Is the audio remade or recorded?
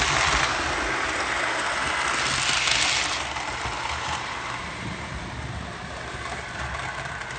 recorded